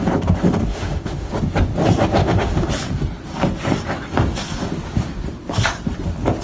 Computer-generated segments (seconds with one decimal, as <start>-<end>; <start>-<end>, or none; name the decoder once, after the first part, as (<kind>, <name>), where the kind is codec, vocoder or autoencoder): 0.7-1.3 (autoencoder, DAC-VAE); 2.2-2.7